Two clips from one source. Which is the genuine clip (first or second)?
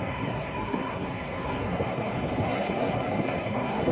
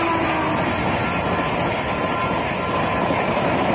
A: second